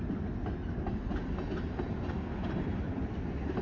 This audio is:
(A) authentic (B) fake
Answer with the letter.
A